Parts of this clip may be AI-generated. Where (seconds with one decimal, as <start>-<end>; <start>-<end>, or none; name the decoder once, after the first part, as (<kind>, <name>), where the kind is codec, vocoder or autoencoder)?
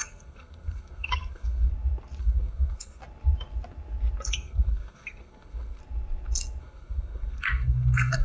0.0-1.7 (codec, SNAC); 2.2-3.0; 4.3-5.8; 6.6-8.2